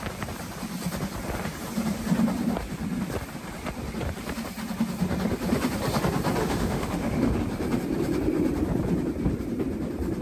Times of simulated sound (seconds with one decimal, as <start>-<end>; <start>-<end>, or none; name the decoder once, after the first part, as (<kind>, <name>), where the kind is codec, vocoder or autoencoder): 6.4-7.4 (autoencoder, DAC-VAE)